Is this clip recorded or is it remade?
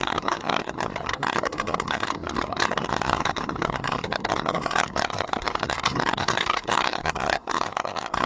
remade